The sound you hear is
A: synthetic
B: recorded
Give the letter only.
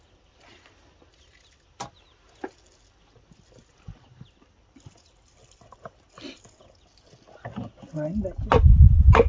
B